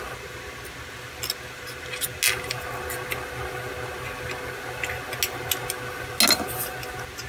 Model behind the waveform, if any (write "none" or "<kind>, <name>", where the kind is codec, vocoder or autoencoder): none